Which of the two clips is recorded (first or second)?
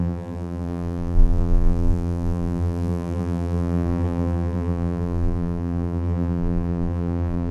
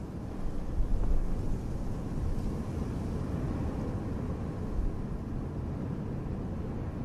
second